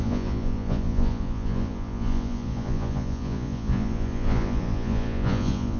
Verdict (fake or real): fake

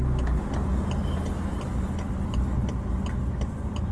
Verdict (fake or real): real